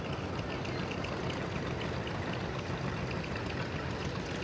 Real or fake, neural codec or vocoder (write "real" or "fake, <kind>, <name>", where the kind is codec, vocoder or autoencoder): real